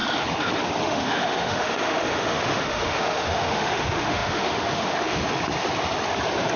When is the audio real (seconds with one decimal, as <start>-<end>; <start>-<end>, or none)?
0.0-0.8; 5.2-6.6